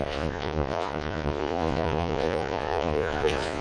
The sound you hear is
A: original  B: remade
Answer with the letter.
B